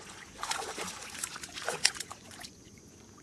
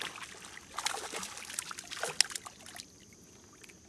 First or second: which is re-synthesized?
first